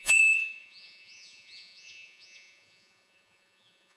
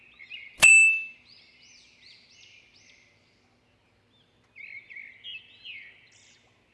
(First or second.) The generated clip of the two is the first